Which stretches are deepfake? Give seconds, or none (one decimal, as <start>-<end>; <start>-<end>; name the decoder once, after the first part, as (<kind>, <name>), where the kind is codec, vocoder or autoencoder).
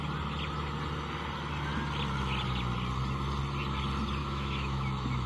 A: 4.2-5.3 (autoencoder, DAC-VAE)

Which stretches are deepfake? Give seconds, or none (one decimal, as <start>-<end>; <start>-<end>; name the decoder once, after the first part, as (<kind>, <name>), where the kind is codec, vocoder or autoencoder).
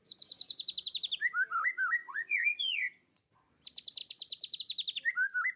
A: 2.0-3.5 (vocoder, Vocos)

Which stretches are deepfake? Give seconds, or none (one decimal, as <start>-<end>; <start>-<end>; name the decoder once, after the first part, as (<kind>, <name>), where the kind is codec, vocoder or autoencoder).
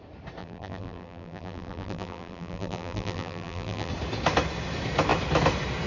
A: 0.4-3.9 (vocoder, BigVGAN v2)